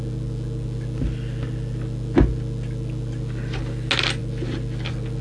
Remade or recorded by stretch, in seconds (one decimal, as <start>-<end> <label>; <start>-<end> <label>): 0.0-5.2 recorded